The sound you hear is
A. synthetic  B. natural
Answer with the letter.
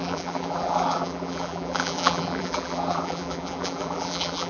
A